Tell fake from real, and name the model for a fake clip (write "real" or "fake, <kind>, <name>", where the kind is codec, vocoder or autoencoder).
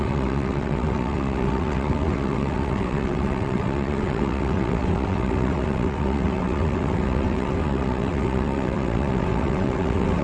fake, vocoder, WaveNeXt